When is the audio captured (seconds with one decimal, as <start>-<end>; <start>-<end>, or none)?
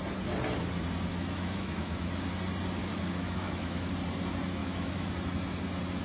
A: 0.0-1.1; 2.0-2.8; 3.9-4.6; 5.1-6.0